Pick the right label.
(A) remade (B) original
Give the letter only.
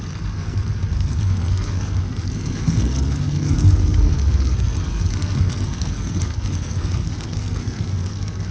A